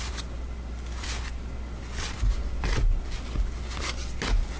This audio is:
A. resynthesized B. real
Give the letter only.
B